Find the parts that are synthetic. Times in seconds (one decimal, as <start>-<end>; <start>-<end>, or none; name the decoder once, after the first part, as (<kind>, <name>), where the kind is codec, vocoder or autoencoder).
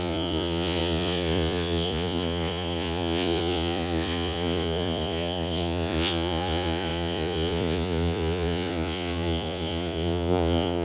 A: 0.0-10.8 (vocoder, Vocos)